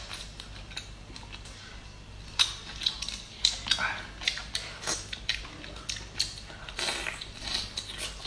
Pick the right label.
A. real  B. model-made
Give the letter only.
A